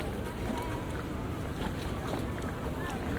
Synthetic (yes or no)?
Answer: no